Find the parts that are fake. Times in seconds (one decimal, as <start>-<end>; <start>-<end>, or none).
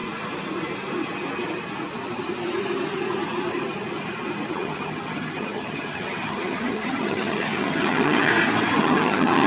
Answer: 4.5-8.3; 8.8-9.5